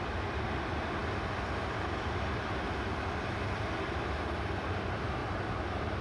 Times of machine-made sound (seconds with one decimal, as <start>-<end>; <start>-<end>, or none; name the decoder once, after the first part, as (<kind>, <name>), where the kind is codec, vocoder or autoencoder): none